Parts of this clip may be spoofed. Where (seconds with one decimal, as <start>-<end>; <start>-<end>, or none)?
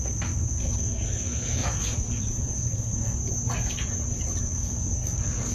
0.0-3.2; 4.4-5.5